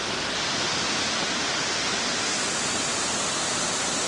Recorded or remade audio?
recorded